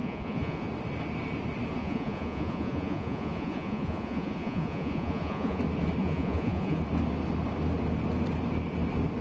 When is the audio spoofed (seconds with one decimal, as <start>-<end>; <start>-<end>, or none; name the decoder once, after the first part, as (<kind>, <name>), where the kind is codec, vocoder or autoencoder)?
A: 0.0-0.7 (vocoder, Vocos); 1.8-5.6; 6.0-6.8

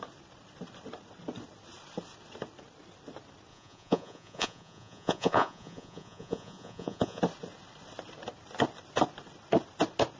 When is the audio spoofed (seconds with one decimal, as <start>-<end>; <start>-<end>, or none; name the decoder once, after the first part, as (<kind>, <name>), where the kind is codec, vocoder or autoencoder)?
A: 3.5-7.2 (vocoder, Vocos)

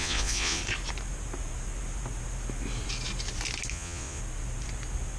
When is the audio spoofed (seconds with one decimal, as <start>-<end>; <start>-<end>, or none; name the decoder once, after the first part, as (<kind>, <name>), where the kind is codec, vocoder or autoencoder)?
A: 0.0-0.6 (vocoder, Vocos); 3.7-4.2

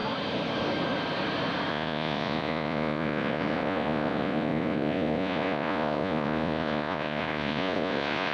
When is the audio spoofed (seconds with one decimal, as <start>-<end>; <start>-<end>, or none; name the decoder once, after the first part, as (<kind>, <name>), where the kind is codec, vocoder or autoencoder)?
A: 1.7-8.3 (vocoder, Vocos)

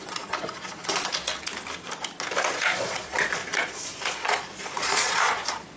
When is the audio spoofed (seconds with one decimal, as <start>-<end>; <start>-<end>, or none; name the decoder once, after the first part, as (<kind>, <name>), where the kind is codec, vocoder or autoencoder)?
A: 0.0-1.1 (vocoder, Vocos); 2.5-5.8

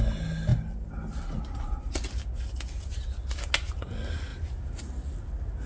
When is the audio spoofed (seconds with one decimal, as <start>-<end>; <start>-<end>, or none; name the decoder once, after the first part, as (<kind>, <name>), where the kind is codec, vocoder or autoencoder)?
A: none

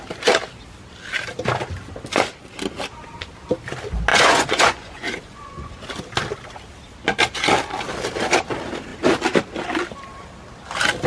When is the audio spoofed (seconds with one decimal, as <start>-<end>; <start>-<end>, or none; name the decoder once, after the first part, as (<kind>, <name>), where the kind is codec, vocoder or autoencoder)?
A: 4.1-5.8 (vocoder, Vocos)